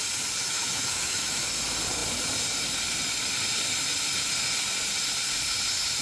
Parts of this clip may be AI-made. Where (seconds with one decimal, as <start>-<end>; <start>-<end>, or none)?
0.4-1.4